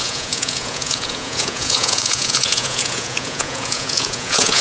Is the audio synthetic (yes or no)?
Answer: yes